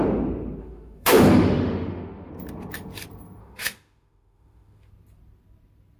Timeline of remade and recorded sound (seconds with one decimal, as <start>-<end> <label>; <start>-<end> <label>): 0.0-0.6 recorded; 0.6-2.3 remade; 2.3-3.4 recorded; 3.4-4.9 remade; 4.9-6.0 recorded